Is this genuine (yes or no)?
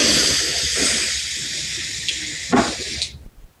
yes